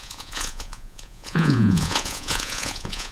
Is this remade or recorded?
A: remade